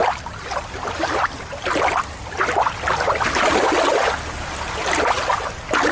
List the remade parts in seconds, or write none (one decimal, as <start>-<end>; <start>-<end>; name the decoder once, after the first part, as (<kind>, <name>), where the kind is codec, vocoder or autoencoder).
3.5-5.9 (vocoder, BigVGAN v2)